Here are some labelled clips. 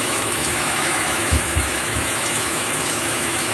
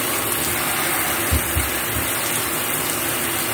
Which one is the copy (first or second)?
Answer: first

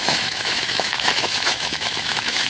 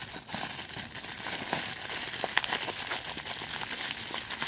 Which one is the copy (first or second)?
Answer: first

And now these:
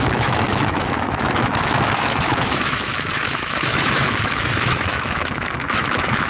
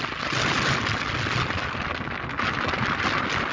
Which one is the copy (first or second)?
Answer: first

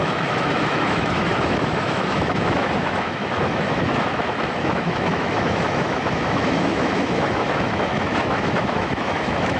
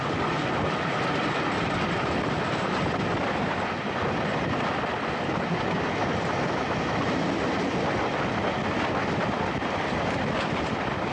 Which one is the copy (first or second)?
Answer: first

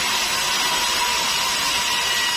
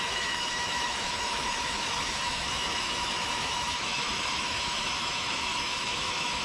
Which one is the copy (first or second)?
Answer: second